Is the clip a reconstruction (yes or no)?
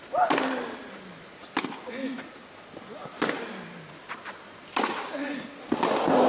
no